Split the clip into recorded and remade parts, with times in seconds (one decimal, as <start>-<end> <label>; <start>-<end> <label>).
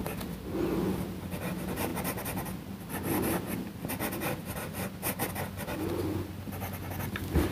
0.0-7.5 recorded